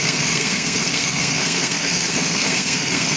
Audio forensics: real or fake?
fake